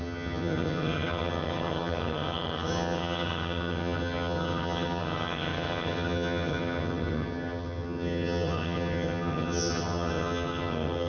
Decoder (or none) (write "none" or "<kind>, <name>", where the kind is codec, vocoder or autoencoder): vocoder, HiFi-GAN